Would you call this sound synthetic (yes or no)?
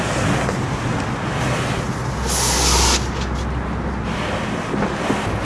no